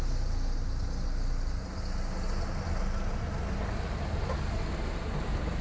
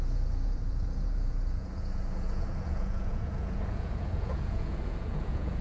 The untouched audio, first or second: first